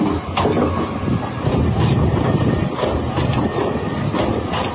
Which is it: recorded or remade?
recorded